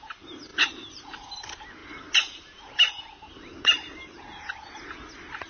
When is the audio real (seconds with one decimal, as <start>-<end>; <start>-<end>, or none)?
0.0-0.5; 1.3-1.8; 4.2-5.5

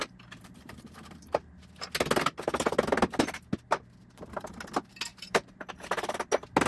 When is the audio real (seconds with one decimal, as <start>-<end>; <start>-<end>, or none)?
1.5-4.0; 4.5-5.1; 5.7-6.7

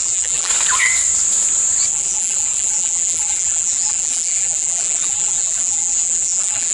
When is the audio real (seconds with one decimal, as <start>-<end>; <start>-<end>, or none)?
0.5-1.9

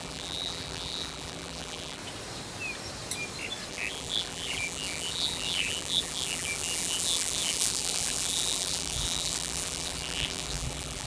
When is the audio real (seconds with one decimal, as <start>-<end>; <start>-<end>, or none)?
2.0-3.7

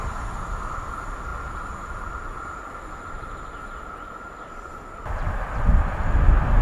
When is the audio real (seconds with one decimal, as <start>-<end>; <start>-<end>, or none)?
0.0-6.6

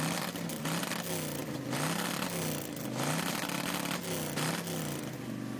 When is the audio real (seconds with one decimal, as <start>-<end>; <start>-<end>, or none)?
0.0-5.6

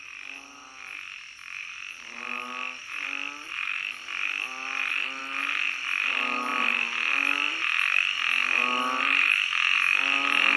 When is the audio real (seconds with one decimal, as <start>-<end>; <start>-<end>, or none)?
0.0-10.6